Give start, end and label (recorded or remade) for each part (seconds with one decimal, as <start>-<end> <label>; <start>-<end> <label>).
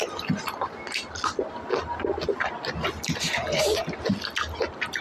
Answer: 0.0-5.0 recorded